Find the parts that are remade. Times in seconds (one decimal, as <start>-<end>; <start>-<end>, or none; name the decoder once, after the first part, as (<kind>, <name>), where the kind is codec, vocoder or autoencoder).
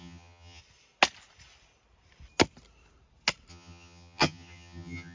0.0-0.6 (vocoder, HiFi-GAN); 3.5-5.1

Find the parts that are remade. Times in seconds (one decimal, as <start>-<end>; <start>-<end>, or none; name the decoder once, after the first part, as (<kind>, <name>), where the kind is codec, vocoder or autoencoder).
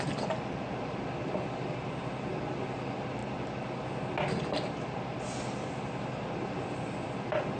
none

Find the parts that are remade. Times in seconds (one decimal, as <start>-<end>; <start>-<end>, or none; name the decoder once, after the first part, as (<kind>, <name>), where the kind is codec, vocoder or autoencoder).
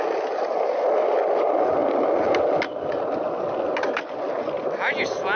none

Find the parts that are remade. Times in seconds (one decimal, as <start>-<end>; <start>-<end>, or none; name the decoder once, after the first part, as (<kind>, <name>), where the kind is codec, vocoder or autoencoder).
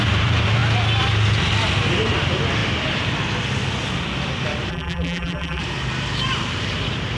4.7-5.6 (vocoder, BigVGAN v2)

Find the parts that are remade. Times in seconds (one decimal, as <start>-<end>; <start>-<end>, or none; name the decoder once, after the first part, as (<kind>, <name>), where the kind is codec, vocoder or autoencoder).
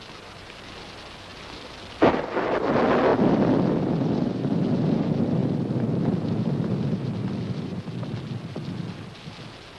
none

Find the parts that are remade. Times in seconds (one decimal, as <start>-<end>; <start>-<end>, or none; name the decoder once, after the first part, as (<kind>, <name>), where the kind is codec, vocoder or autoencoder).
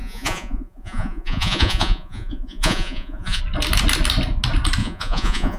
0.0-3.4 (vocoder, Vocos); 4.8-5.6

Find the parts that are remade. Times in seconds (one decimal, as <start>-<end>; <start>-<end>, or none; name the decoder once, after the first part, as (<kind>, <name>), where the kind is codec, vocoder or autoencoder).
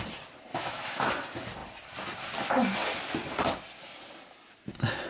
0.5-1.1 (autoencoder, DAC-VAE)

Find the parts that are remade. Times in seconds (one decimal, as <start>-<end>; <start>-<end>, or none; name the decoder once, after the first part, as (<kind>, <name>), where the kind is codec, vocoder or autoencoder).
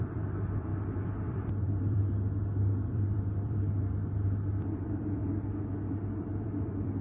0.0-5.2 (vocoder, BigVGAN v2); 6.2-7.0